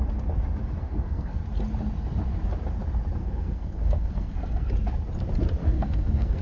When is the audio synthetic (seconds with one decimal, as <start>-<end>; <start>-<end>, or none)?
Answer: 0.8-1.4; 3.2-4.7; 5.6-6.4